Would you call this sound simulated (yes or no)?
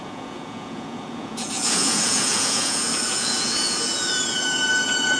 yes